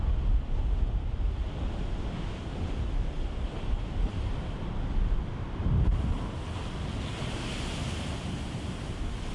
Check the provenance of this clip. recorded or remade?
recorded